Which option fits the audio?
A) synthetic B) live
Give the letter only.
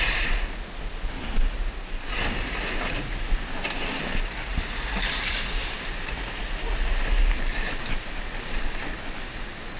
B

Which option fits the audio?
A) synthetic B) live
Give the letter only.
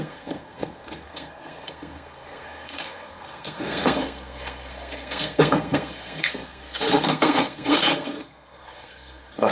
A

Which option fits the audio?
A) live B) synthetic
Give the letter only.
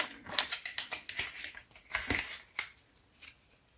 A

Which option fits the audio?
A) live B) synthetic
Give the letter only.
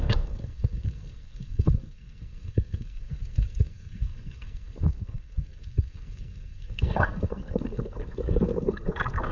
B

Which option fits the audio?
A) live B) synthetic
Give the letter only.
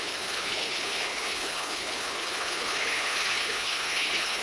B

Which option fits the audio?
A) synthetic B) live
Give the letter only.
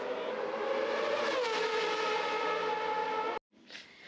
B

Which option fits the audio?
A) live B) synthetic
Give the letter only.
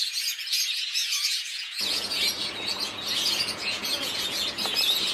B